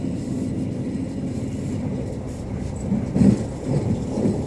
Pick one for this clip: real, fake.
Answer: real